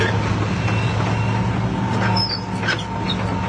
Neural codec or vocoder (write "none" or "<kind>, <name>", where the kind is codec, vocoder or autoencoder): none